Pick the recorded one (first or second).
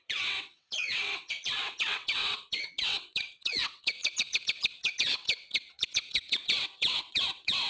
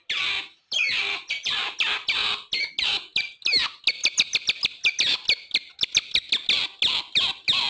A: second